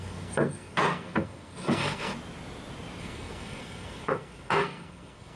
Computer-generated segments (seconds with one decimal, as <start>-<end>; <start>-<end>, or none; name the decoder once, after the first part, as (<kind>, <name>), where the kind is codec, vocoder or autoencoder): 0.0-2.1 (codec, SNAC); 3.0-5.4

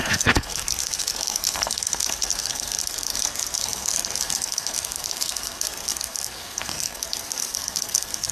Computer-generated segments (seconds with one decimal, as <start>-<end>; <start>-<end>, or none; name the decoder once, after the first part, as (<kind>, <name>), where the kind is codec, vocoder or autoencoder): 0.0-8.3 (codec, SNAC)

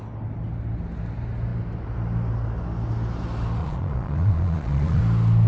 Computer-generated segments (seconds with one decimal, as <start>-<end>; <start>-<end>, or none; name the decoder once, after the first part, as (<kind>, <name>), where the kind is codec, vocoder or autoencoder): 3.6-5.0 (vocoder, Vocos)

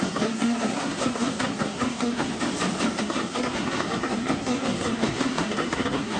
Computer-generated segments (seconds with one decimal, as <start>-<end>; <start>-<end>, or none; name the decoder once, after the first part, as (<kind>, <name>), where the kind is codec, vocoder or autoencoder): 0.0-2.3 (codec, SNAC); 3.0-6.2